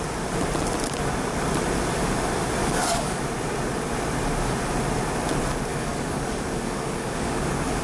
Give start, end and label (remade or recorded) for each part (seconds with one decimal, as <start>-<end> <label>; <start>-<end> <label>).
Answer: 0.0-2.6 recorded; 2.6-3.2 remade; 3.2-5.7 recorded; 5.7-7.8 remade